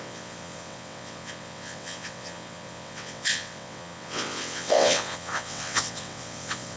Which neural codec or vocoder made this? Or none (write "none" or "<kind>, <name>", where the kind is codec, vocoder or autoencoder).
vocoder, WaveNeXt